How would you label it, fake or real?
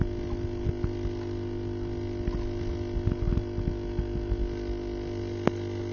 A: real